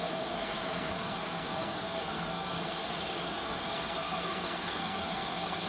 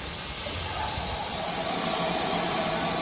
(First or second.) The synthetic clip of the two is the first